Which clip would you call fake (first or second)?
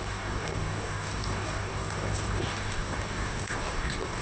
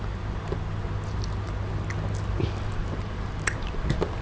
first